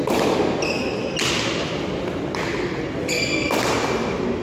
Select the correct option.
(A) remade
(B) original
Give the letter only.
B